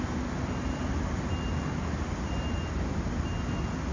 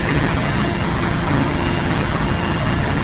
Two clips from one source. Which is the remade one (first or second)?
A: second